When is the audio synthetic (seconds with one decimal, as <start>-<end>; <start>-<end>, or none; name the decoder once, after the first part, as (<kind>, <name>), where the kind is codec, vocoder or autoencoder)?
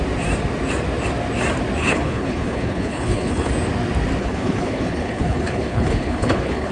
1.8-3.5 (codec, HILCodec); 4.2-6.7